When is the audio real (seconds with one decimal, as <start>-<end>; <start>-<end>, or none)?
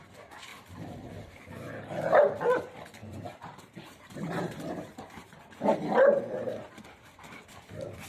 0.0-3.0; 6.8-8.1